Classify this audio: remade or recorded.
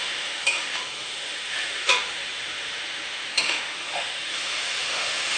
remade